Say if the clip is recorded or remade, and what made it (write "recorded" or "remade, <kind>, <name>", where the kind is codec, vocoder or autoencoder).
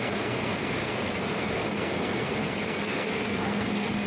remade, codec, SNAC